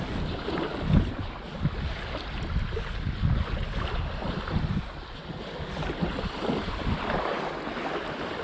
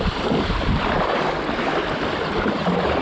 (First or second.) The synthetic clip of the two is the second